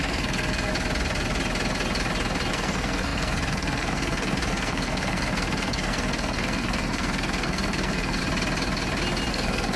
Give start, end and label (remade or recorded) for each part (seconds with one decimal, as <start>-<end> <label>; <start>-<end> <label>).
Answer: 0.0-0.7 remade; 0.7-2.5 recorded; 2.5-8.2 remade; 8.2-9.3 recorded; 9.3-9.8 remade